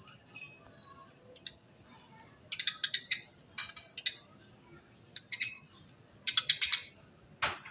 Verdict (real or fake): real